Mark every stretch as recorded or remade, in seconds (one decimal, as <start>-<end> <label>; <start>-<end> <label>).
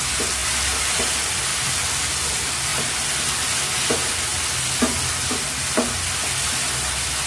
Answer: 0.0-0.4 recorded; 0.4-1.0 remade; 1.0-1.5 recorded; 1.5-2.0 remade; 2.0-7.3 recorded